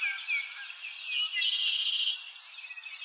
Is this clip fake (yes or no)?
no